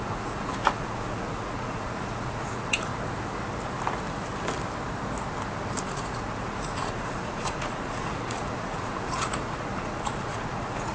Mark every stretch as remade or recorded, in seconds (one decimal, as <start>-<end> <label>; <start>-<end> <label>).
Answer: 0.0-2.9 remade; 2.9-5.8 recorded; 5.8-10.9 remade